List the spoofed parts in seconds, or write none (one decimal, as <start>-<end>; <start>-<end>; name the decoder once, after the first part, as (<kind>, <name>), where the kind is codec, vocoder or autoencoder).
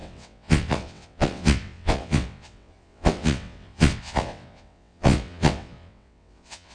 0.0-6.7 (vocoder, WaveNeXt)